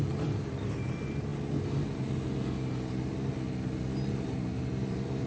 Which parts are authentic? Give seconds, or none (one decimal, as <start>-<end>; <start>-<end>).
1.3-4.1

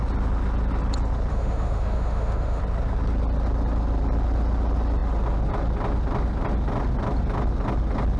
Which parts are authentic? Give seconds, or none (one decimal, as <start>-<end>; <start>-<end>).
0.0-1.3; 2.6-8.2

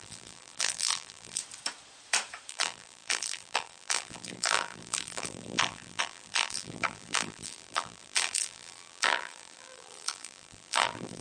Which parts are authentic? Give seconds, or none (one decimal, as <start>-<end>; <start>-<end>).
1.4-2.5

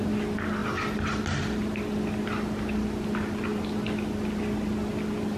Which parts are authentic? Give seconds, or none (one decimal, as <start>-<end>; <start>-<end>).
0.0-0.6; 1.2-5.4

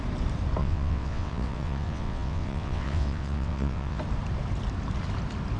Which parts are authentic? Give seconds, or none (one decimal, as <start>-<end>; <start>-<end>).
0.0-0.6; 4.0-5.6

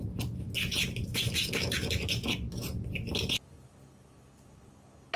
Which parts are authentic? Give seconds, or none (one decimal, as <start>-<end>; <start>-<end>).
0.0-1.1; 1.9-5.2